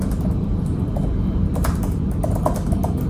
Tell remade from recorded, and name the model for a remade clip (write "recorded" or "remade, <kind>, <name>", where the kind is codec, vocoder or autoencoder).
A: recorded